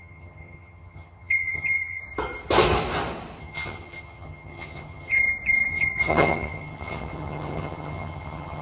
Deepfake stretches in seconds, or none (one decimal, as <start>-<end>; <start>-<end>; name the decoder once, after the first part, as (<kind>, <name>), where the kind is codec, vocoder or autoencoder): 0.0-2.0 (vocoder, HiFi-GAN); 3.4-5.1; 5.7-8.6